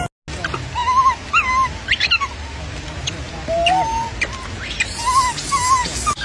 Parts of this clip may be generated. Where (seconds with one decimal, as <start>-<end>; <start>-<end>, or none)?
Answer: none

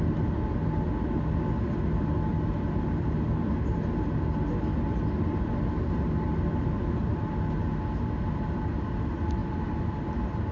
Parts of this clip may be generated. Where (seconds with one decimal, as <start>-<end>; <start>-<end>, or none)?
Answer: none

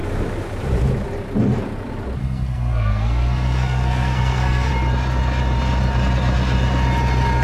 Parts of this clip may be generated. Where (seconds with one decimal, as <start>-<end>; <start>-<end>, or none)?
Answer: 2.2-4.7

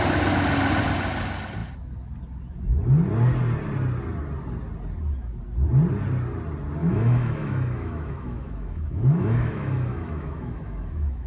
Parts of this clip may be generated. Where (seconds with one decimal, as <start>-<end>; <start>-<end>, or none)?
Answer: 6.8-11.3